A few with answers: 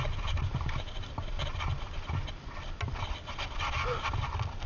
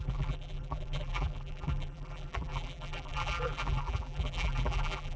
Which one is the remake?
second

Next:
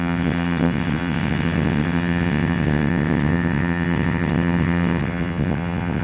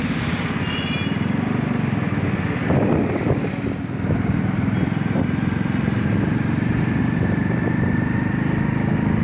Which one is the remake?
first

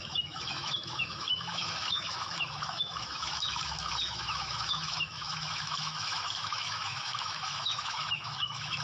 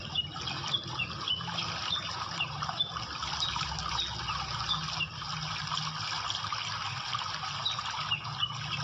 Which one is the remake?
first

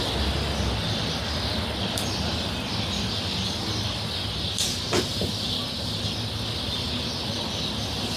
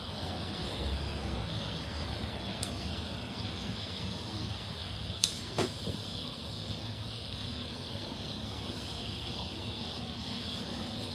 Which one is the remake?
second